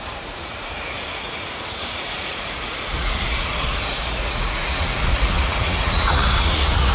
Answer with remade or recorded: remade